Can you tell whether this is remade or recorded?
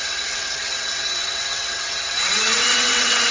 remade